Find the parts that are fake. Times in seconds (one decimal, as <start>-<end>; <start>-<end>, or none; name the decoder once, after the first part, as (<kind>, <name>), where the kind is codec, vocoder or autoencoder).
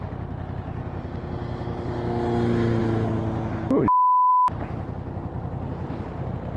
none